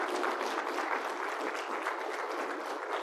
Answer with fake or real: real